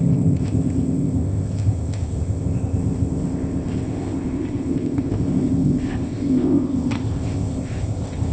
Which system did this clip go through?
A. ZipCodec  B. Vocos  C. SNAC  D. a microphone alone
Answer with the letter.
A